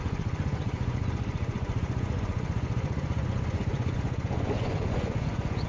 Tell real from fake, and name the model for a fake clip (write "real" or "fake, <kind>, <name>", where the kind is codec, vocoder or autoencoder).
fake, vocoder, Vocos